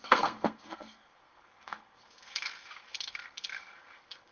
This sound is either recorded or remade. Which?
remade